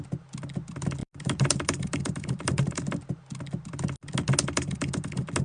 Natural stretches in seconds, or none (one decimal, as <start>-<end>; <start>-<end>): 0.0-1.0; 2.8-5.4